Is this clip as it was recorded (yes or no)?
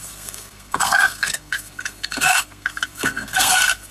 no